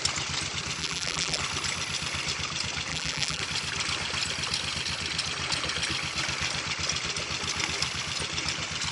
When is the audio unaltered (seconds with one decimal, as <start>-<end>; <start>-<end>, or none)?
0.0-0.8; 1.4-2.9; 3.4-8.9